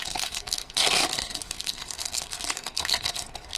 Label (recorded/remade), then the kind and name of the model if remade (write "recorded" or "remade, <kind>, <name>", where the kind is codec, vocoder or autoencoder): remade, codec, SNAC